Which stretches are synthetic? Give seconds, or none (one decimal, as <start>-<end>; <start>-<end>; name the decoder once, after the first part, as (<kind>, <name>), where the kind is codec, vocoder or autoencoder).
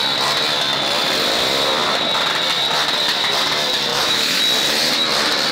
3.9-4.4 (autoencoder, DAC-VAE)